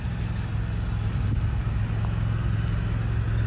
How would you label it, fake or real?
real